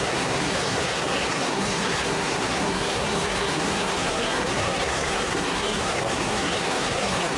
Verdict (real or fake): fake